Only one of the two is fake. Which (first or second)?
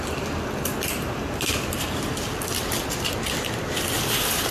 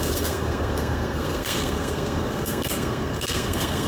second